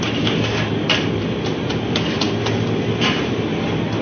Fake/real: real